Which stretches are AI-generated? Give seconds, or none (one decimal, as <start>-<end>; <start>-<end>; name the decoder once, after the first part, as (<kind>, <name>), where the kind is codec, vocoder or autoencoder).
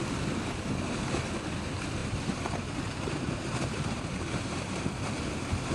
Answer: 2.0-4.8 (vocoder, BigVGAN v2)